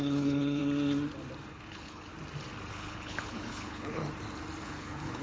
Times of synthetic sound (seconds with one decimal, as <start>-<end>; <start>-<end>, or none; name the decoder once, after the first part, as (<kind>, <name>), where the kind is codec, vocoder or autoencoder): 0.0-0.6 (codec, HILCodec); 1.5-2.1; 2.7-4.0; 4.6-5.2